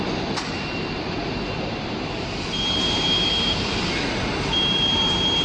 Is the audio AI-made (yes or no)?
yes